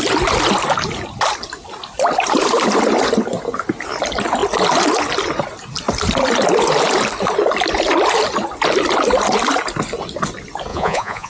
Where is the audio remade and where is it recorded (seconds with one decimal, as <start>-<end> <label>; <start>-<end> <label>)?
0.0-10.7 recorded; 10.7-11.3 remade